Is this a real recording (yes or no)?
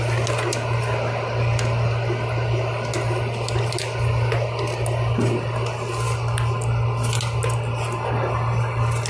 yes